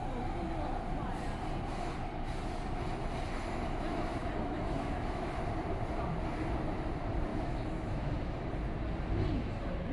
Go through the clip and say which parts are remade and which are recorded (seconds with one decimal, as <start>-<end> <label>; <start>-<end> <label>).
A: 0.0-4.1 recorded; 4.1-5.4 remade; 5.4-7.3 recorded; 7.3-8.5 remade; 8.5-9.9 recorded